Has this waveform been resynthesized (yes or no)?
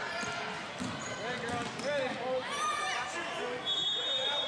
no